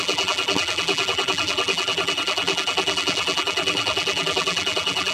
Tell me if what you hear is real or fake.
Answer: fake